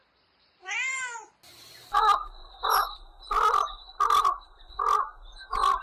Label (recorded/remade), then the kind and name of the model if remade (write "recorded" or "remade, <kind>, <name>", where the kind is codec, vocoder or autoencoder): recorded